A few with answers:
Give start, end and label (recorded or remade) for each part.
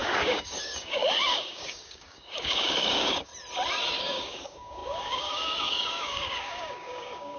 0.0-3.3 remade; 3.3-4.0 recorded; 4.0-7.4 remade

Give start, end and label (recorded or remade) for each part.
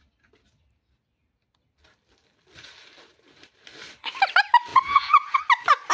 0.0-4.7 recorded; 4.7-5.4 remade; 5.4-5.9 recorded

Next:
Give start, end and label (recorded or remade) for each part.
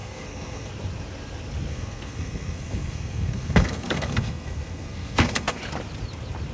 0.0-0.7 remade; 0.7-1.7 recorded; 1.7-5.6 remade; 5.6-6.5 recorded